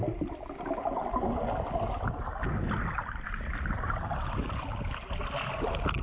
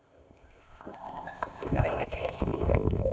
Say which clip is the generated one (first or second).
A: second